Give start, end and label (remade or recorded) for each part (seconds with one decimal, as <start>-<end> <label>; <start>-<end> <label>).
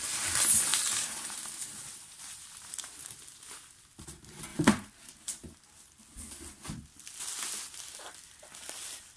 0.0-0.7 recorded; 0.7-3.2 remade; 3.2-4.5 recorded; 4.5-6.0 remade; 6.0-9.2 recorded